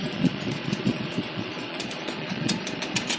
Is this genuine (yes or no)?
no